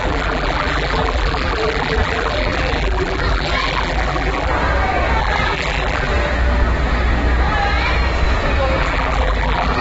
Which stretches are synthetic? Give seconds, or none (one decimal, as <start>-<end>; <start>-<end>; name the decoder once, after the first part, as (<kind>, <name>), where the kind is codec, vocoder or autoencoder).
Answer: 0.0-4.5 (vocoder, BigVGAN v2); 5.2-6.1; 8.8-9.8

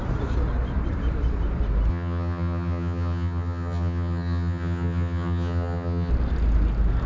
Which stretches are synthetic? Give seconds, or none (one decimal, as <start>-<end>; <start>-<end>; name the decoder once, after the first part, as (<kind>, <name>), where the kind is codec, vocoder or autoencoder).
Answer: 1.9-6.1 (vocoder, HiFi-GAN)